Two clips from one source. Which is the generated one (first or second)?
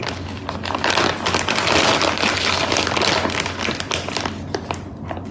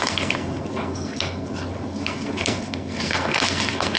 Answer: second